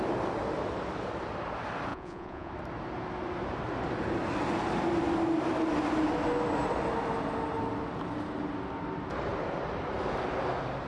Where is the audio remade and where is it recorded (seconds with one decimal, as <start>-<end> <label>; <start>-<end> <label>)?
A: 0.0-1.9 recorded; 1.9-2.5 remade; 2.5-10.9 recorded